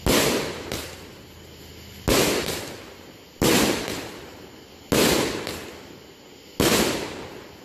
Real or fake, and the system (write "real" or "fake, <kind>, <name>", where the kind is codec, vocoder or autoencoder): real